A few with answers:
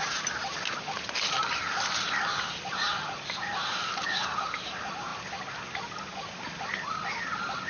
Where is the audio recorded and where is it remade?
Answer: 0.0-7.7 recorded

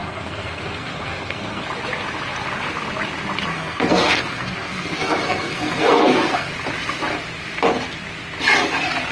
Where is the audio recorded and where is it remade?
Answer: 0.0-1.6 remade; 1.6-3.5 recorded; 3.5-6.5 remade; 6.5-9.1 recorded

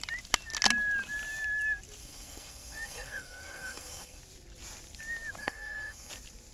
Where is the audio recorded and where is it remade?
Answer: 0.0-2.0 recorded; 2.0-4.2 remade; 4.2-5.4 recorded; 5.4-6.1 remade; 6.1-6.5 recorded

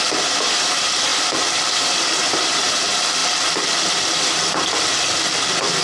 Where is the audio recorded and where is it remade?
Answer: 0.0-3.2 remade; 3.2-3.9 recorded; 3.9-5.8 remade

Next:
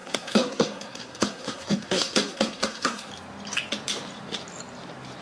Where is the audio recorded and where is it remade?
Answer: 0.0-3.1 remade; 3.1-5.2 recorded

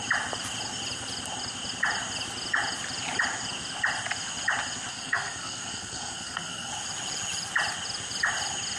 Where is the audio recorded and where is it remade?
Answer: 0.0-4.9 recorded; 4.9-6.7 remade; 6.7-8.8 recorded